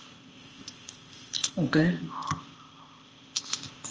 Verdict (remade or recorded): remade